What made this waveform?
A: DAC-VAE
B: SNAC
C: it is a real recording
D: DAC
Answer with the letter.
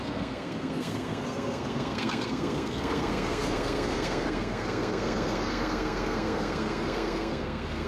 B